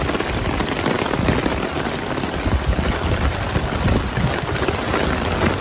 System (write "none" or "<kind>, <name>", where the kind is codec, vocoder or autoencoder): none